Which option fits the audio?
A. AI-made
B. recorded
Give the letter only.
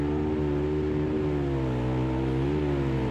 B